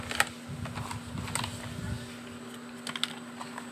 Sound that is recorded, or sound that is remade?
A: recorded